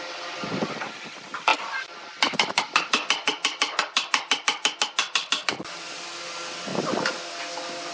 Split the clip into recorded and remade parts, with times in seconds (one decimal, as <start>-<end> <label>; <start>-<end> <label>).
0.0-7.9 recorded